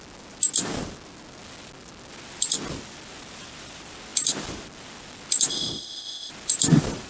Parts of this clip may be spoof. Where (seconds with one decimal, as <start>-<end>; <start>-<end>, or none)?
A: 5.5-6.3